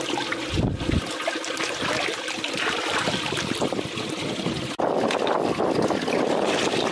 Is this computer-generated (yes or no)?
no